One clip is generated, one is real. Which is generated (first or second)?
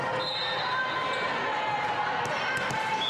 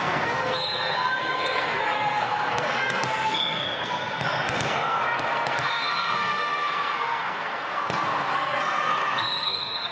second